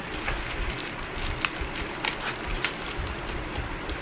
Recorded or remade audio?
recorded